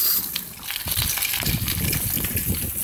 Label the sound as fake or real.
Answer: real